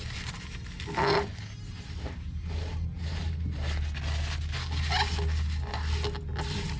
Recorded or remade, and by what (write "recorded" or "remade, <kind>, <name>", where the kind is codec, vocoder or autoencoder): recorded